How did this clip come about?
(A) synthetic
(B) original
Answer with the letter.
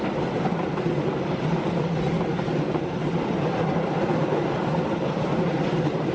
B